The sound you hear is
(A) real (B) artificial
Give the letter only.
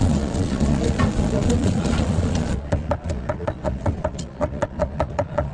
B